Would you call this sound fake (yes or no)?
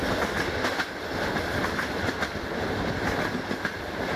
no